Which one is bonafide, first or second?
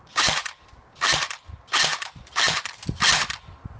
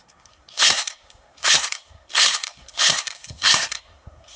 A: first